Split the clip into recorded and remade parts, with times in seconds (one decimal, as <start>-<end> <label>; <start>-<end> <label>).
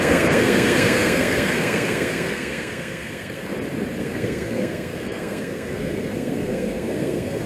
0.0-3.5 remade; 3.5-4.0 recorded; 4.0-7.5 remade